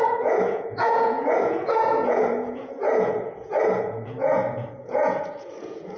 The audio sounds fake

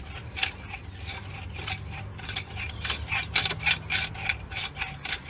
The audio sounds real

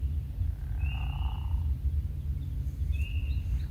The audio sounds real